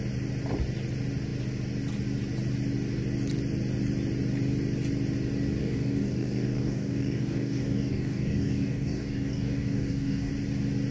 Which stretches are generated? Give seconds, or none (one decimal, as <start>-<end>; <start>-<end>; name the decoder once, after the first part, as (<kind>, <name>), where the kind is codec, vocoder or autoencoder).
5.6-10.3 (codec, DAC)